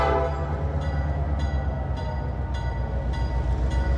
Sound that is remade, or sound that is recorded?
recorded